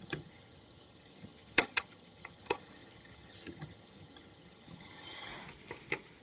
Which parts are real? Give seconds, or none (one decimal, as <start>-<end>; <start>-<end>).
5.3-6.2